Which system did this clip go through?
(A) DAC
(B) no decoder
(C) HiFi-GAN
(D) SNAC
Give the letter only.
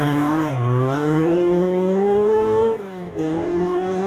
A